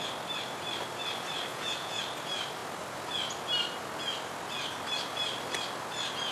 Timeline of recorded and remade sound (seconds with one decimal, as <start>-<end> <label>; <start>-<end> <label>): 0.0-1.5 recorded; 1.5-2.0 remade; 2.0-6.3 recorded